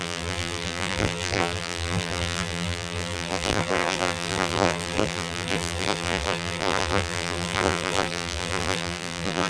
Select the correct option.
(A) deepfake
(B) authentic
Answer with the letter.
A